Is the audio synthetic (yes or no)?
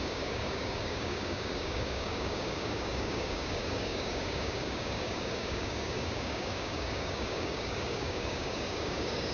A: yes